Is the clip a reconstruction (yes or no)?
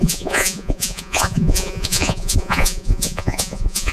yes